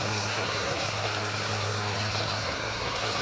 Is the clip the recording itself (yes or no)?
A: no